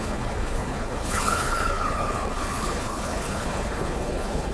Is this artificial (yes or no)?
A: yes